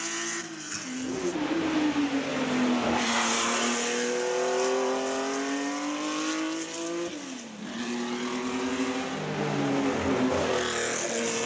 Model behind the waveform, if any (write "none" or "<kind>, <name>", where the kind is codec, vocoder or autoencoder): none